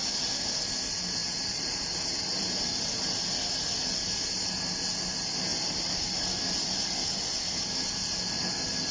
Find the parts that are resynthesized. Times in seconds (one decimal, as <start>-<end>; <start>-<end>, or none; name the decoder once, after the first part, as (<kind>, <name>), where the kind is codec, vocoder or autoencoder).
1.2-2.8 (vocoder, BigVGAN v2)